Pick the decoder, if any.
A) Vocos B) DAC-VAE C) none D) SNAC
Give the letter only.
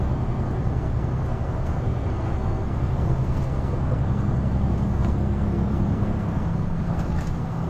D